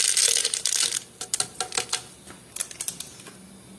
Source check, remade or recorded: recorded